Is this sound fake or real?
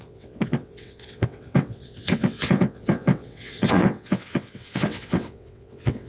fake